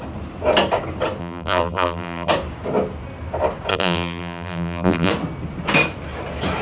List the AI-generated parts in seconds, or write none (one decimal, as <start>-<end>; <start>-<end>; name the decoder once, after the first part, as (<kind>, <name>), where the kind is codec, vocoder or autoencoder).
1.2-2.3 (vocoder, BigVGAN v2); 3.7-5.1